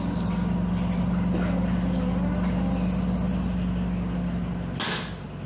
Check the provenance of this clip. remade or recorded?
recorded